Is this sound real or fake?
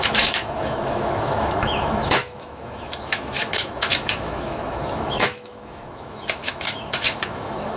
fake